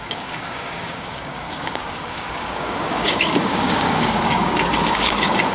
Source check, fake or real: fake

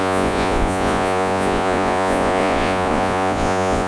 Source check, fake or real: fake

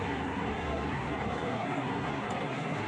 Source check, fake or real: fake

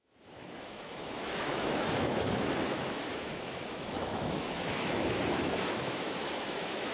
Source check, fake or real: fake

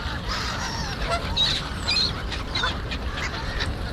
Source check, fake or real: fake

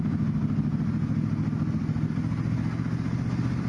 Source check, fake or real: real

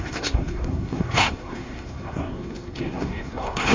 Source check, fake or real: fake